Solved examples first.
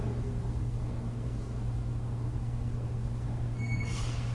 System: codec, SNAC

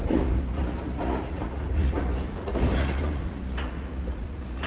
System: vocoder, Vocos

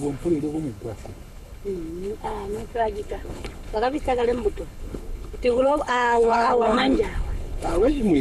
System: codec, HILCodec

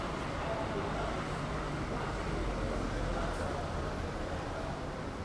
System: none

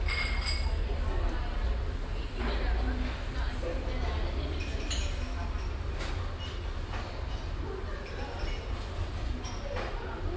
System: none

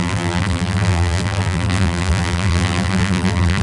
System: vocoder, BigVGAN v2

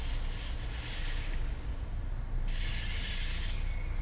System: none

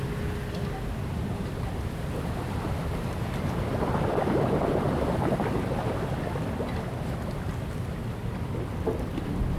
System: none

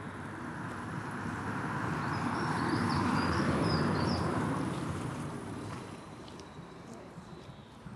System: vocoder, BigVGAN v2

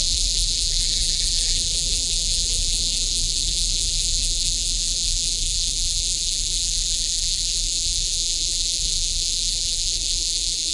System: vocoder, BigVGAN v2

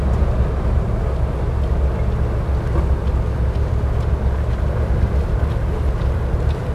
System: none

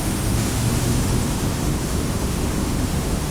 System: autoencoder, DAC-VAE